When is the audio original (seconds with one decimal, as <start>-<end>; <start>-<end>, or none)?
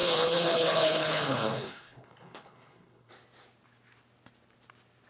3.1-5.1